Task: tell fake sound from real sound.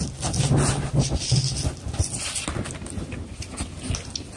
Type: real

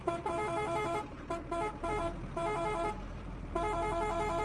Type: fake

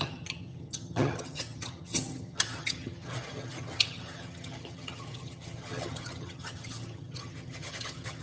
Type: fake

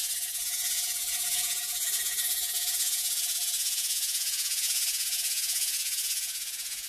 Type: fake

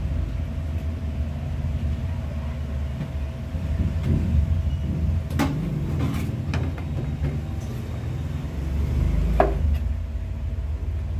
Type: real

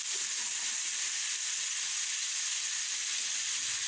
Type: real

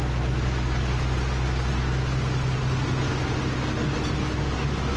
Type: real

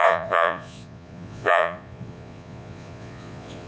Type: fake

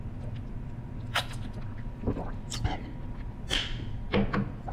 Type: real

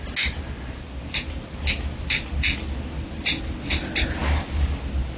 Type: real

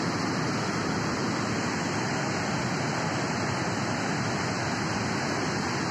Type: real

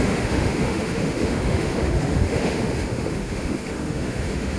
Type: fake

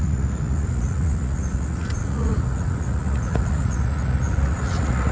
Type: fake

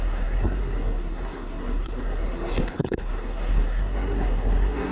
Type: fake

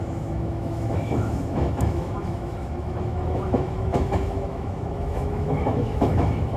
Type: fake